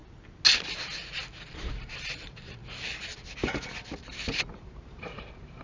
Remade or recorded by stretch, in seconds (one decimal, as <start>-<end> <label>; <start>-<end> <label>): 0.0-1.5 recorded; 1.5-2.6 remade; 2.6-4.6 recorded; 4.6-5.6 remade